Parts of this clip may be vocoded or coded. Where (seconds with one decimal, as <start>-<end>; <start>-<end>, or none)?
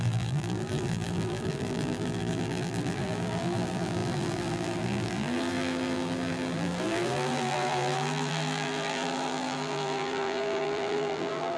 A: 0.0-11.6